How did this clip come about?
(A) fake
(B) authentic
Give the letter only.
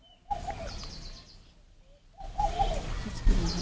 B